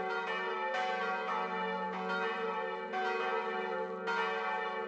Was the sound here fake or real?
real